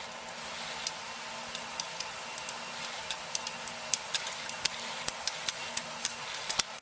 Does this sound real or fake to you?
real